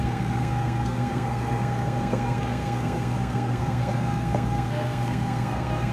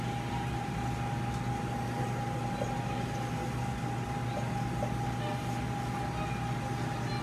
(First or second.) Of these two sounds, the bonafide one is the second